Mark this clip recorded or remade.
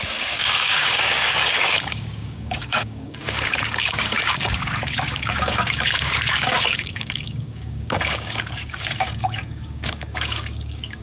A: remade